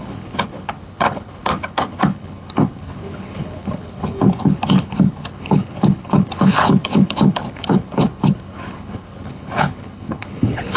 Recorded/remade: remade